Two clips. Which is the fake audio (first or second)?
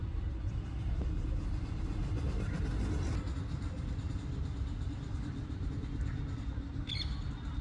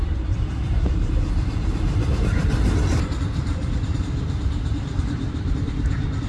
second